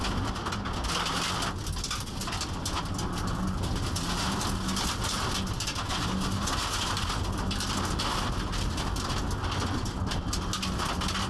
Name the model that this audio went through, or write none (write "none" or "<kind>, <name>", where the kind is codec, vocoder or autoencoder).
none